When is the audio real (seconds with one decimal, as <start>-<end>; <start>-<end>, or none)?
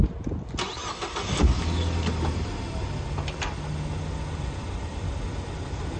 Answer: 0.0-6.0